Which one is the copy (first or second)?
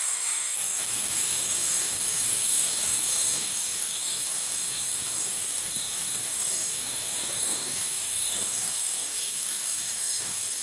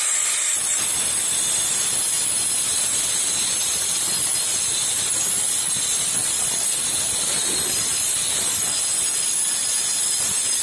first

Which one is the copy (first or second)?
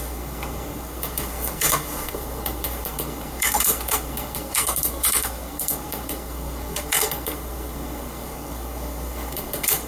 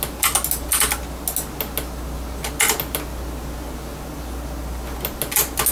first